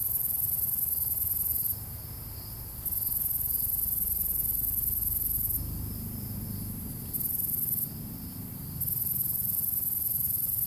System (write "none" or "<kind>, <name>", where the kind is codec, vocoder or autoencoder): none